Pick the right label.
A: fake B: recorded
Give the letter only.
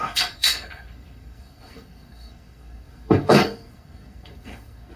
A